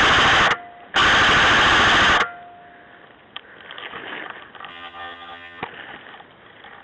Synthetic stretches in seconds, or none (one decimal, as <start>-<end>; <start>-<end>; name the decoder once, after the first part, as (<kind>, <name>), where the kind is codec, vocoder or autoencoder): 4.7-5.6 (vocoder, HiFi-GAN)